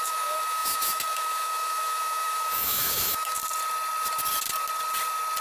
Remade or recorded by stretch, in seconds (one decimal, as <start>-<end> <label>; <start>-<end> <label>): 0.0-3.4 remade; 3.4-5.4 recorded